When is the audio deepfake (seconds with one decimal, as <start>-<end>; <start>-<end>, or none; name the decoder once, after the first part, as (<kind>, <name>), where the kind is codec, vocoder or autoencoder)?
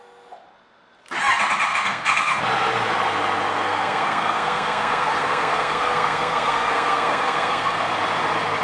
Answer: 1.7-2.4 (codec, SNAC); 3.5-7.9